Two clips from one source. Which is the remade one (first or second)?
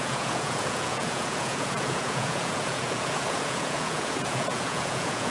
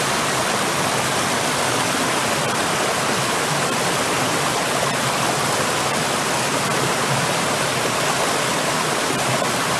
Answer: first